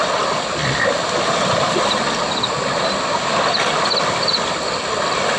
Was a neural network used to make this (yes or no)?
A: yes